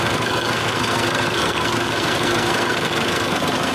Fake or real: fake